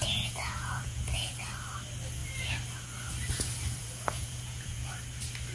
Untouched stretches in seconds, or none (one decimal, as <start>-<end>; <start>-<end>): 1.3-3.8; 4.9-5.5